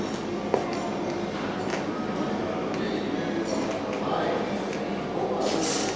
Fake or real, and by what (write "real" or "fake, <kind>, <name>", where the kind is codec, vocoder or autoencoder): real